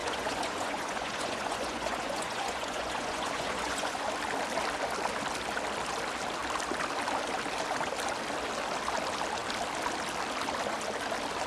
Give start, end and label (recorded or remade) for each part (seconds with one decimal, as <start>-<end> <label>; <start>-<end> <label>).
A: 0.0-4.0 remade; 4.0-11.5 recorded